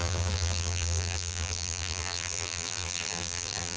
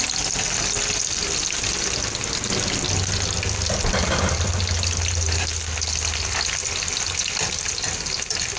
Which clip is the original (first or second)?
second